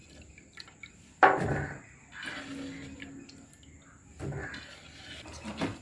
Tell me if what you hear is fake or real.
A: real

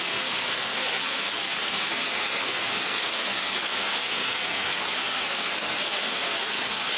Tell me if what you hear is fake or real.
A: fake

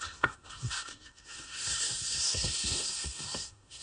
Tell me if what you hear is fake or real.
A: fake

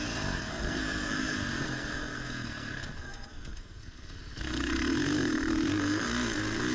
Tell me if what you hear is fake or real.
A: fake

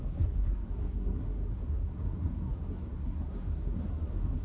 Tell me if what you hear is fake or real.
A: fake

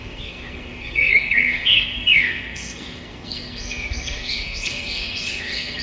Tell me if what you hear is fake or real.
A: fake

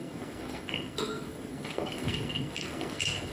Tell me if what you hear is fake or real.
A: fake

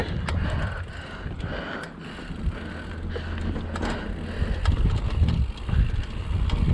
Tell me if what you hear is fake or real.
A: real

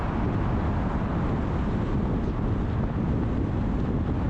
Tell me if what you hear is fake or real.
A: real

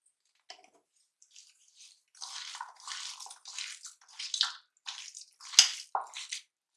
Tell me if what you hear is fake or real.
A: real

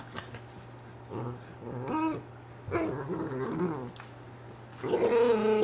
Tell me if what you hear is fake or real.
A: real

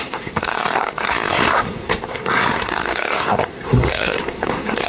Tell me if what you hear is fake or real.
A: fake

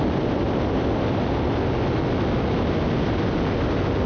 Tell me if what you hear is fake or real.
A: real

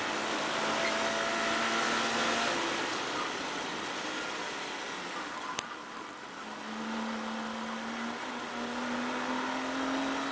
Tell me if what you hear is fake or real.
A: real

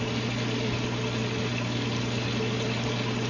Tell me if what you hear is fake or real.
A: real